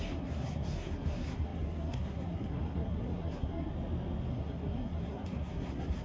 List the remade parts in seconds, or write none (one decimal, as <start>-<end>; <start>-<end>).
0.0-3.7; 4.3-6.0